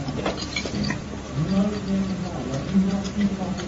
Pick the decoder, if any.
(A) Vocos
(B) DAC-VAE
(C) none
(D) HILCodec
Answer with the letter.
C